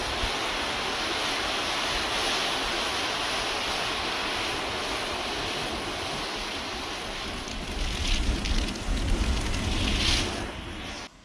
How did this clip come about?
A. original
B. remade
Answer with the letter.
A